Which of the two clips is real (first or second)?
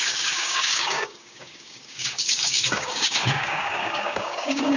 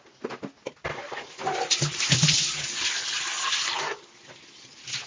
second